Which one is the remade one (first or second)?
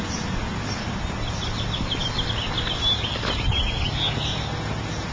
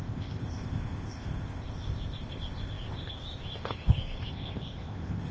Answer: second